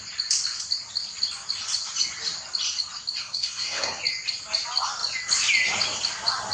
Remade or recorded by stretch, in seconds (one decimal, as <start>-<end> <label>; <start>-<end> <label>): 0.0-3.2 recorded; 3.2-4.0 remade; 4.0-6.5 recorded